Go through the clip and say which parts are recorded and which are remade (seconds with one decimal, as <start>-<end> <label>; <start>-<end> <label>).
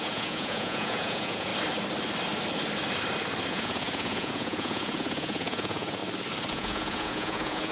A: 0.0-1.5 remade; 1.5-3.5 recorded; 3.5-6.0 remade; 6.0-6.5 recorded; 6.5-7.7 remade